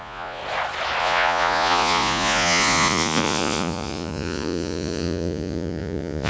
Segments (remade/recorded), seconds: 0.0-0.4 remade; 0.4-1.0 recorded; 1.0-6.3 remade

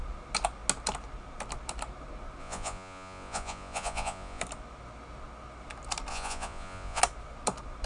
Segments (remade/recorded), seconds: 0.0-2.4 recorded; 2.4-4.4 remade; 4.4-6.1 recorded; 6.1-7.0 remade; 7.0-7.9 recorded

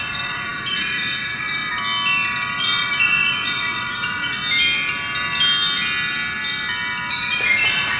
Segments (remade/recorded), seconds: 0.0-1.6 remade; 1.6-2.6 recorded; 2.6-4.4 remade; 4.4-7.1 recorded; 7.1-8.0 remade

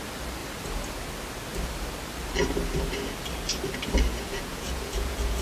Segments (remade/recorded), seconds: 0.0-4.1 recorded; 4.1-5.4 remade